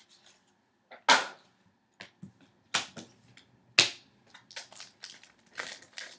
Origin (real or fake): real